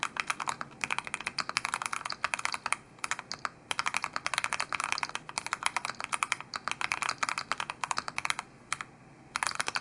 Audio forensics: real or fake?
real